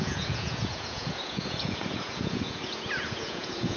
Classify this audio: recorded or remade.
remade